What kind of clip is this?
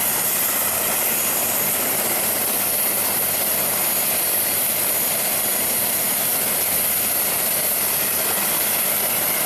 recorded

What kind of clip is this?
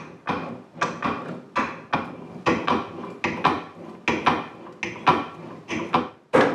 recorded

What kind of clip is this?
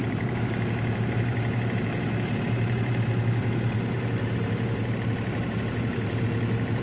remade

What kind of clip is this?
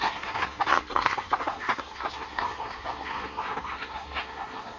remade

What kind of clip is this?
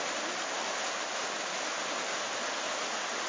recorded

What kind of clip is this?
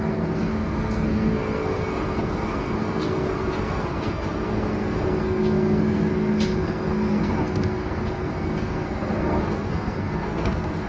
remade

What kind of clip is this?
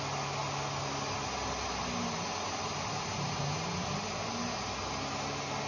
recorded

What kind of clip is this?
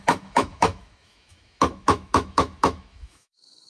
remade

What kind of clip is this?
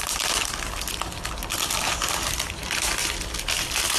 recorded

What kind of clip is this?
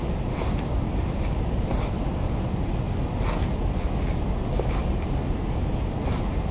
recorded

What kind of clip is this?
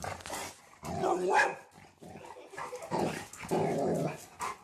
recorded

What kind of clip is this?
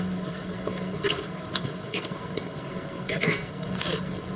remade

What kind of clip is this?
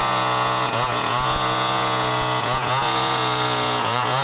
remade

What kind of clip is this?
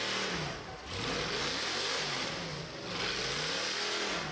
recorded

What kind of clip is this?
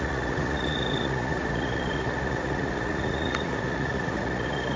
remade